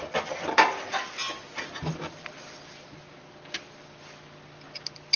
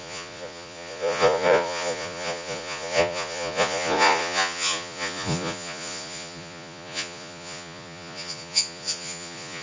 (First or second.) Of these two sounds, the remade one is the second